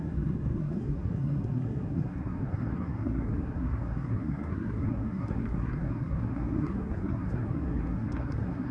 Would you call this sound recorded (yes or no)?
no